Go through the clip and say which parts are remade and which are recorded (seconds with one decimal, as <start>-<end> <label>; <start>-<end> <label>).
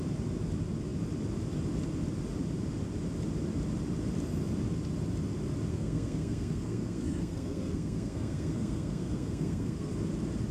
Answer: 0.0-5.7 recorded; 5.7-9.9 remade; 9.9-10.5 recorded